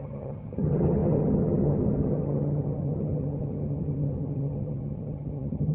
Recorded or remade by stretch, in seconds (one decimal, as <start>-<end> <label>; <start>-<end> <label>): 0.0-5.7 remade